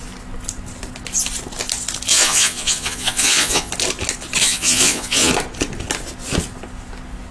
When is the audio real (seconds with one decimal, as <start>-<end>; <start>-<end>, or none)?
0.0-2.1; 3.7-4.4; 5.3-7.3